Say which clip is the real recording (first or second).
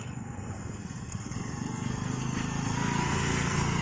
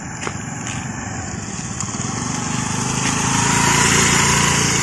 second